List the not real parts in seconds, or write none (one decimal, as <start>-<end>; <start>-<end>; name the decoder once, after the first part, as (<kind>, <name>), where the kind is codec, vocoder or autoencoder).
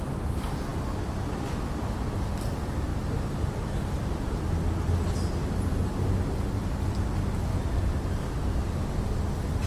none